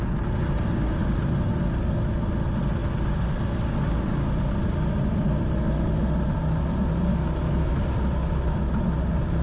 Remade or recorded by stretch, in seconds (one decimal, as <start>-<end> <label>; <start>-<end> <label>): 0.0-7.1 recorded; 7.1-7.8 remade; 7.8-9.4 recorded